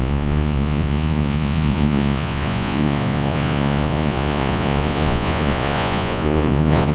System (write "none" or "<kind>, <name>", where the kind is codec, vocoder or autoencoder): vocoder, Vocos